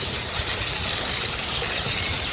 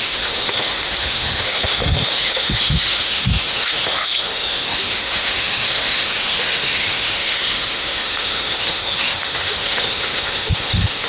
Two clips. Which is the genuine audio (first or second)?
first